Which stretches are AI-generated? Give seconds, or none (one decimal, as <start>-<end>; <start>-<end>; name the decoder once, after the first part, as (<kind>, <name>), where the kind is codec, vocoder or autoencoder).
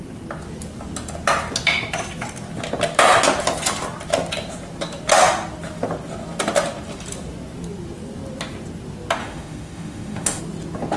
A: 9.2-10.4 (autoencoder, DAC-VAE)